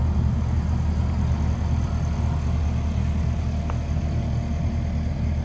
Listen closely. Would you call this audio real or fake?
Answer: real